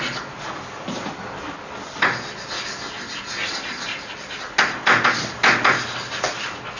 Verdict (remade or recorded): recorded